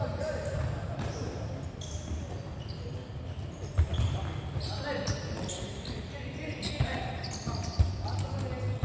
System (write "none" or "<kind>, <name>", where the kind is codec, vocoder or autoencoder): none